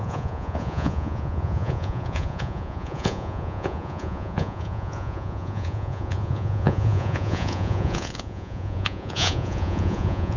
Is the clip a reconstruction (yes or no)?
yes